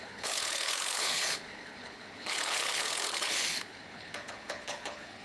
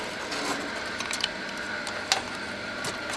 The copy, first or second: first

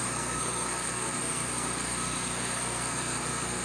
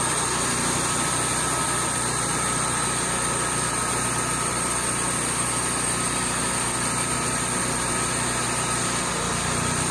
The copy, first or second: first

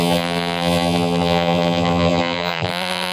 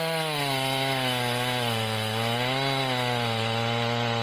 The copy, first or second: first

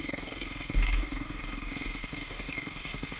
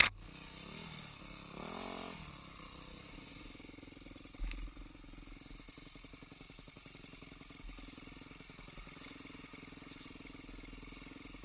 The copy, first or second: first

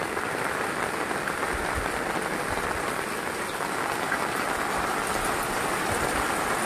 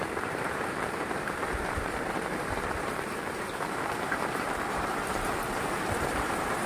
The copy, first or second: second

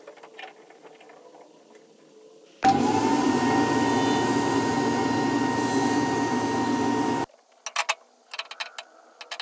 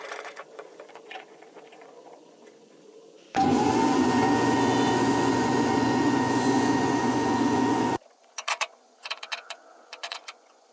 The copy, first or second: second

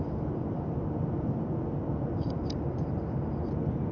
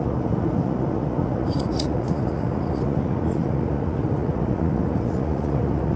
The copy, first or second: second